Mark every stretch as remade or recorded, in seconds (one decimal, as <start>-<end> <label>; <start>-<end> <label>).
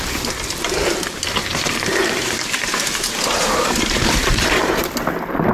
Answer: 0.0-1.5 recorded; 1.5-4.8 remade; 4.8-5.5 recorded